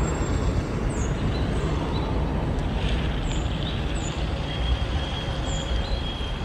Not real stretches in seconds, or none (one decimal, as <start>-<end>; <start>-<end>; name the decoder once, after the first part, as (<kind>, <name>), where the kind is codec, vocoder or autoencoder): 2.6-6.4 (vocoder, BigVGAN v2)